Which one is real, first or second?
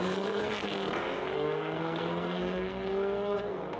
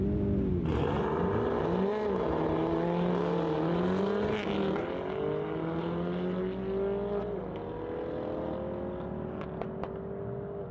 second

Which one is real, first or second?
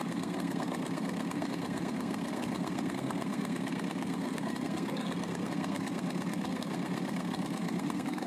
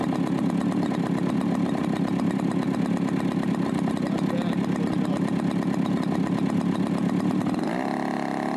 second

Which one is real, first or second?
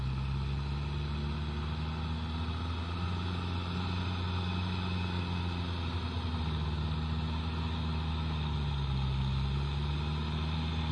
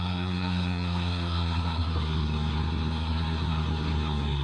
first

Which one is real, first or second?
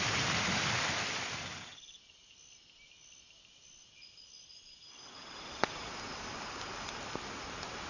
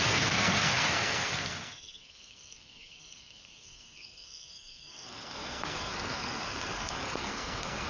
first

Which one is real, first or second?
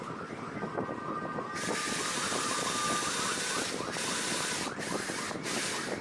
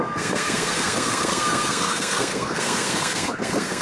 first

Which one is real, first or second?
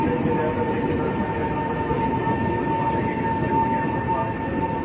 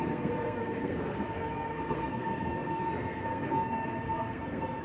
first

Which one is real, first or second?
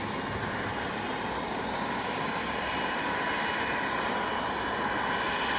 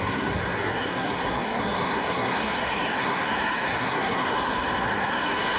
first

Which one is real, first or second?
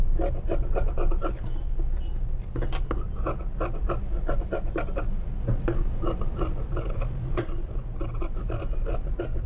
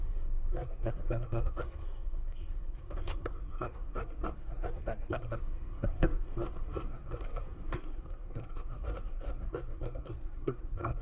first